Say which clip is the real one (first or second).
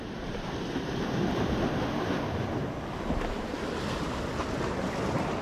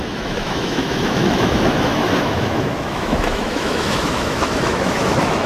first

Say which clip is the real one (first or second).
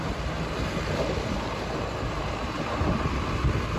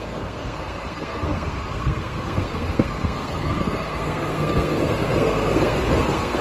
first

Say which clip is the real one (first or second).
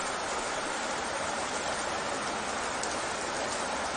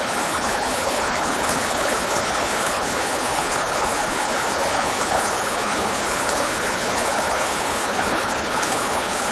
first